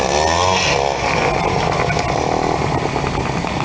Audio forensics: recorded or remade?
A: recorded